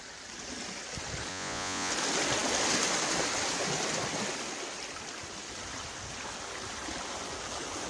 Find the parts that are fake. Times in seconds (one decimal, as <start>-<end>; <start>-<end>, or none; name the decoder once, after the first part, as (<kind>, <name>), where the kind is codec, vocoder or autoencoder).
1.3-1.9 (vocoder, Vocos)